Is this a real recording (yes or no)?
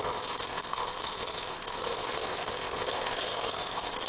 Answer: no